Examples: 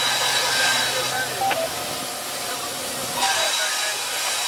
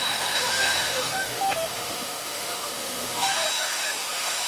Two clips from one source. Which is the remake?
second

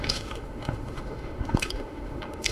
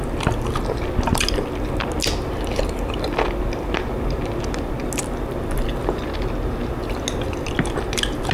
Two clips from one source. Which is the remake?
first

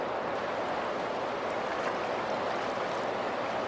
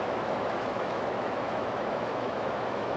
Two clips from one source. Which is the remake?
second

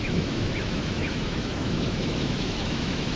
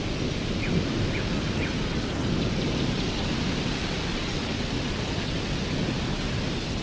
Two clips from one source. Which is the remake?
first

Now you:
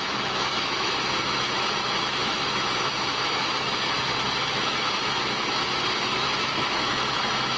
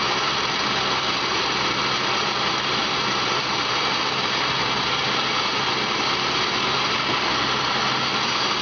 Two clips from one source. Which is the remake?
first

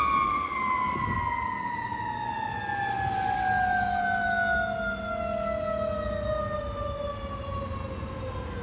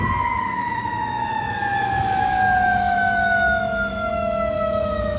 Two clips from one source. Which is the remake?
second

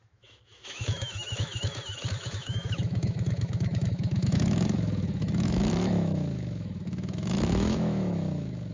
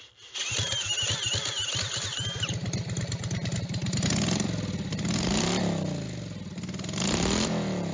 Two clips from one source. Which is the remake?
first